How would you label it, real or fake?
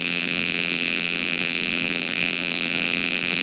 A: fake